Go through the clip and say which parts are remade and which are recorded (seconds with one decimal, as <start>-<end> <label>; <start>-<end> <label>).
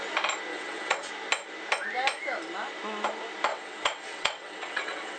0.0-0.5 recorded; 0.5-1.1 remade; 1.1-3.5 recorded; 3.5-5.2 remade